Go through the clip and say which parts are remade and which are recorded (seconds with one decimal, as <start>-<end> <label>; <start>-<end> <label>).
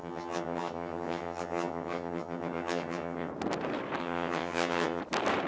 0.0-3.3 remade; 3.3-4.0 recorded; 4.0-5.0 remade; 5.0-5.5 recorded